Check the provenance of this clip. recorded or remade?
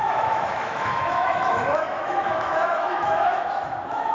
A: remade